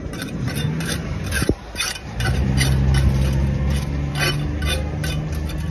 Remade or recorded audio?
recorded